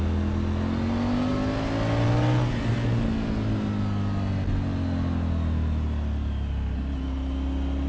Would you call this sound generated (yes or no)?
no